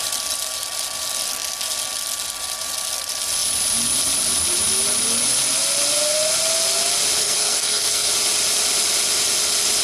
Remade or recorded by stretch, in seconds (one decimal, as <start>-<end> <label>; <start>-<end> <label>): 0.0-7.2 recorded; 7.2-8.1 remade; 8.1-9.8 recorded